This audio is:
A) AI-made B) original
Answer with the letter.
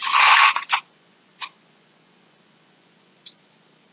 A